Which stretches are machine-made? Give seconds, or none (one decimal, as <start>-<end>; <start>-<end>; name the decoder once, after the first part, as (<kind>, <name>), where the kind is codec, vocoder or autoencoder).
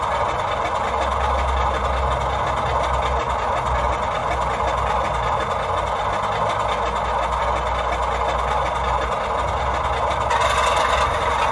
none